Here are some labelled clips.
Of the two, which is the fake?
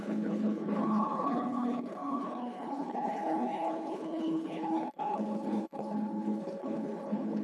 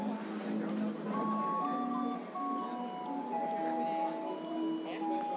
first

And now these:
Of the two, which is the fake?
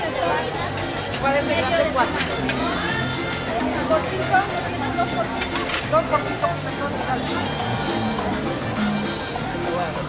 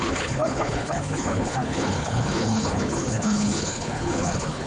second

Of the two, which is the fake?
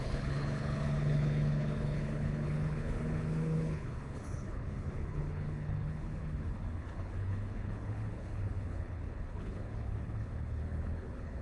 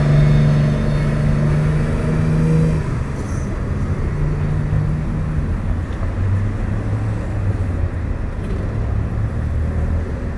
first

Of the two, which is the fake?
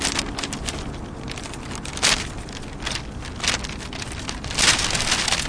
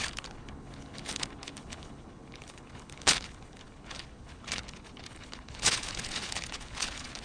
second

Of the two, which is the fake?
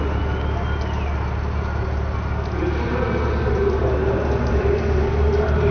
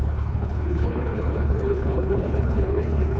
second